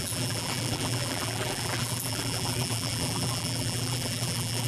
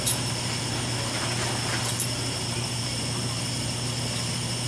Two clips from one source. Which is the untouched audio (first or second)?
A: second